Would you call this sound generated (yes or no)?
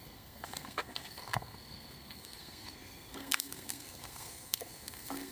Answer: yes